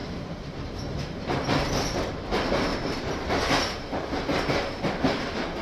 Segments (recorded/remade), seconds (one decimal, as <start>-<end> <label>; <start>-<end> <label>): 0.0-1.7 remade; 1.7-2.7 recorded; 2.7-3.6 remade; 3.6-5.6 recorded